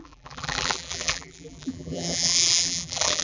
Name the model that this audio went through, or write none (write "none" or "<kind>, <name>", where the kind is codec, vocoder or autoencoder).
vocoder, BigVGAN v2